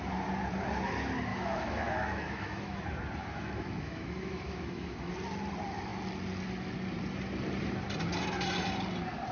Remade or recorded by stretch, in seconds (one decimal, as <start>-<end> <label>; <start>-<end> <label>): 0.0-1.3 recorded; 1.3-2.8 remade; 2.8-3.2 recorded; 3.2-5.1 remade; 5.1-9.3 recorded